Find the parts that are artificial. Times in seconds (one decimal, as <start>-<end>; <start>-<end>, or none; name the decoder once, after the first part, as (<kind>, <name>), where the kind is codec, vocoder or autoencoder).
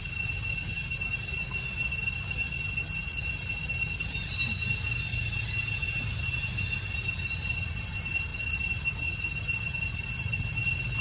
none